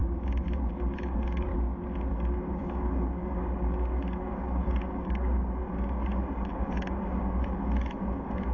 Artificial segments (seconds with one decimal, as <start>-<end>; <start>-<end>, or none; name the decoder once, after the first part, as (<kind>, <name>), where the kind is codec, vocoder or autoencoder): 0.7-1.5 (codec, DAC); 2.1-8.5